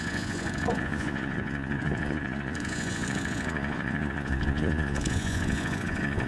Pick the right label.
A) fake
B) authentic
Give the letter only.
A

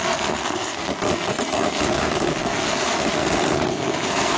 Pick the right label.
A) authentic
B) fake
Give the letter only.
B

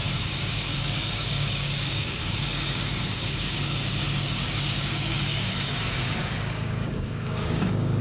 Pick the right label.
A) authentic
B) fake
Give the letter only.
B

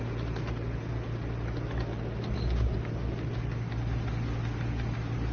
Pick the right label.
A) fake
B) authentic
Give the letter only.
B